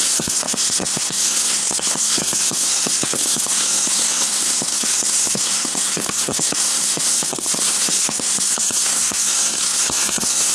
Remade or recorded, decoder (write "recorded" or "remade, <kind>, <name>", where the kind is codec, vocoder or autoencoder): remade, codec, SNAC